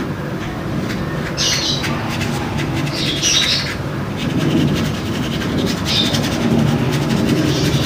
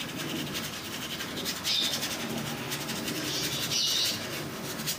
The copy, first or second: first